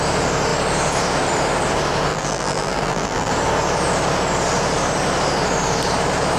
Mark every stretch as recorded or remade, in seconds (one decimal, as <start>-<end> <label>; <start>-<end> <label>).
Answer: 0.0-2.1 recorded; 2.1-3.3 remade; 3.3-6.4 recorded